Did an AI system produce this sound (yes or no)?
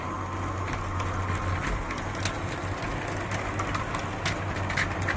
no